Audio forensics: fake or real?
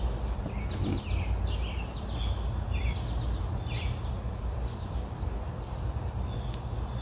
real